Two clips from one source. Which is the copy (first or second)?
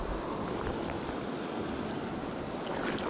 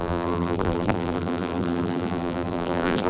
second